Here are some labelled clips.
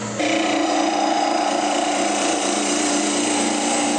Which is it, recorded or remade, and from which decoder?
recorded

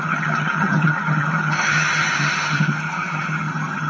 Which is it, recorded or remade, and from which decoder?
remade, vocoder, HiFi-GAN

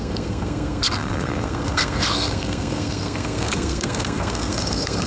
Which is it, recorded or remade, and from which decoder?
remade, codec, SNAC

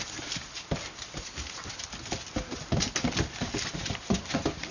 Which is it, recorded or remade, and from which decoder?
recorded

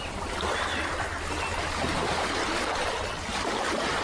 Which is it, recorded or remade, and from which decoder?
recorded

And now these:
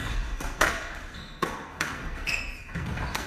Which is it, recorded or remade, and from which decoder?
remade, codec, SNAC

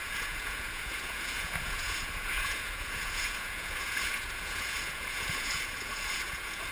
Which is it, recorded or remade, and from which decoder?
remade, vocoder, Vocos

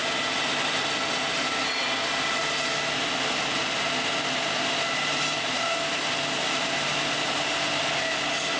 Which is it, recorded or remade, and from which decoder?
recorded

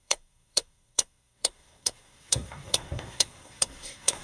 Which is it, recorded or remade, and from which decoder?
remade, codec, SNAC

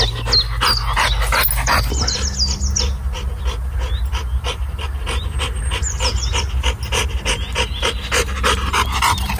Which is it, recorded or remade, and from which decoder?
recorded